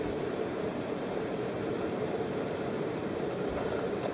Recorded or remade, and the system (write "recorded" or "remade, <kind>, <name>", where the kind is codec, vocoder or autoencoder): remade, vocoder, BigVGAN v2